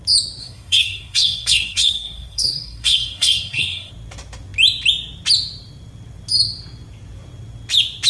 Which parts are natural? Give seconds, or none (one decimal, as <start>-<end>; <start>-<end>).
0.0-0.4; 3.9-8.1